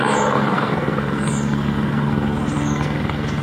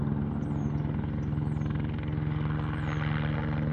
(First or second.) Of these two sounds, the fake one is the first